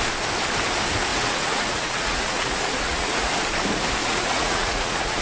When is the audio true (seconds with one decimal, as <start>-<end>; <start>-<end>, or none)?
0.0-1.1; 3.3-4.0